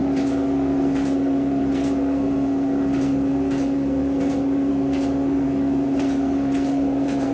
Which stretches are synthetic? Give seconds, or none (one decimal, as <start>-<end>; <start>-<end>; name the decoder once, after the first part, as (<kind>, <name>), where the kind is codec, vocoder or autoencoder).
0.0-7.3 (codec, SNAC)